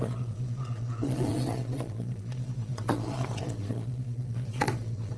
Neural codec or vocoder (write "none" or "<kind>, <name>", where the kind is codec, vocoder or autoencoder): vocoder, Vocos